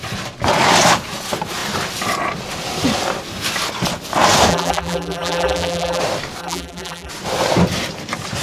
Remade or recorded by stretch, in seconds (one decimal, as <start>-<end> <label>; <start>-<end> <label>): 0.0-4.5 recorded; 4.5-6.0 remade; 6.0-6.4 recorded; 6.4-7.1 remade; 7.1-8.4 recorded